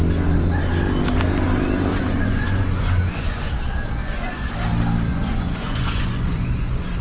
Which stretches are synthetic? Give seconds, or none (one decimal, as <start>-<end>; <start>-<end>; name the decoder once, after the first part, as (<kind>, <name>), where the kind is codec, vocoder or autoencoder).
1.9-3.5 (vocoder, Vocos); 4.0-4.5; 5.1-7.0